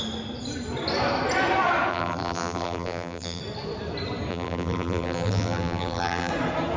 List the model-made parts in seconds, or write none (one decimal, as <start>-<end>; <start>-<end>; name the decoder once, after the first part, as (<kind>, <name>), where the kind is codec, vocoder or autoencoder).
1.9-3.4 (vocoder, BigVGAN v2); 4.3-6.3